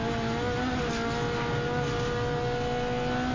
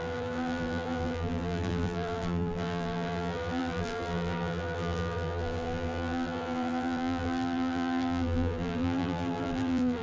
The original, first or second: first